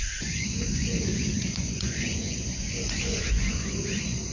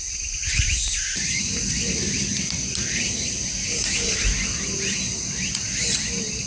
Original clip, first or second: second